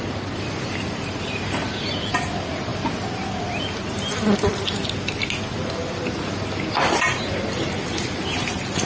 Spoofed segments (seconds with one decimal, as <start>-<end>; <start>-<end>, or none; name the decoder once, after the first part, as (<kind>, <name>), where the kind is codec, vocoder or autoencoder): none